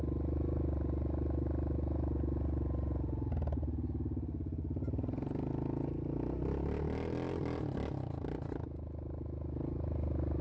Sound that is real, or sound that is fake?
real